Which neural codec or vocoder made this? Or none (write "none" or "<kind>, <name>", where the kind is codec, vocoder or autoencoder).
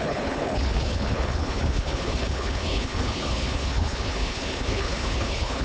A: codec, HILCodec